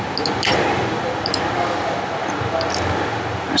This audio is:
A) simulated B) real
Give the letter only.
B